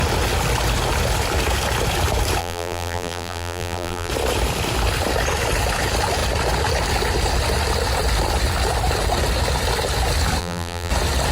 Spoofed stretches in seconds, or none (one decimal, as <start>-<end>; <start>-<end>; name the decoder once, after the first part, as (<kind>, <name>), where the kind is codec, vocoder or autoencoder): 2.4-4.1 (vocoder, BigVGAN v2); 10.4-10.9